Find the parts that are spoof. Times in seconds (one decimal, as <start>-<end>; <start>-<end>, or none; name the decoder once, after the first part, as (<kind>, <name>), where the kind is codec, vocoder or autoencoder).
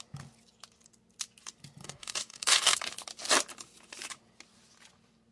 1.8-2.8 (codec, DAC)